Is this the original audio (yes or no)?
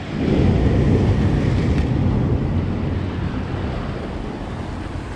yes